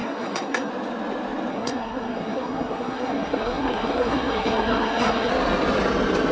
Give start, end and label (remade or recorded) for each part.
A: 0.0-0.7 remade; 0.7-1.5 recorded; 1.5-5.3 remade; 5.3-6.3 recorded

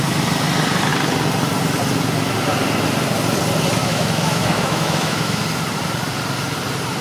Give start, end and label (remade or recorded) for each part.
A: 0.0-3.8 recorded; 3.8-5.4 remade; 5.4-7.0 recorded

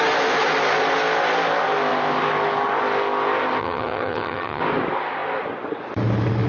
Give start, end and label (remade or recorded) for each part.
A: 0.0-3.6 recorded; 3.6-4.6 remade; 4.6-6.5 recorded

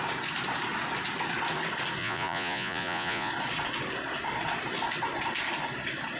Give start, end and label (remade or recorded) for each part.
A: 0.0-2.0 recorded; 2.0-3.3 remade; 3.3-6.2 recorded

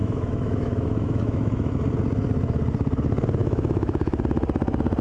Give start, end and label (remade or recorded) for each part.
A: 0.0-1.7 remade; 1.7-3.4 recorded; 3.4-4.2 remade; 4.2-5.0 recorded

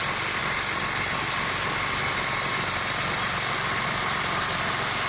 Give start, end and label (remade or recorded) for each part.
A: 0.0-5.1 recorded

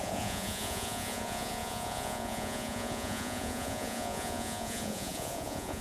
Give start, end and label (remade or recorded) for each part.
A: 0.0-5.8 remade